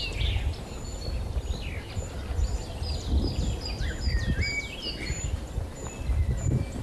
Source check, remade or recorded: recorded